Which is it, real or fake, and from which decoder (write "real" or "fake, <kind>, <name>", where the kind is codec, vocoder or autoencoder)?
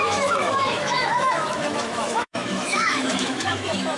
fake, autoencoder, DAC-VAE